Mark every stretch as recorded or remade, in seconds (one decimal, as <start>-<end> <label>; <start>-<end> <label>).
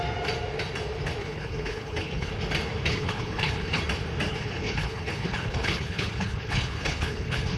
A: 0.0-1.2 recorded; 1.2-2.3 remade; 2.3-2.9 recorded; 2.9-3.8 remade; 3.8-4.3 recorded; 4.3-7.6 remade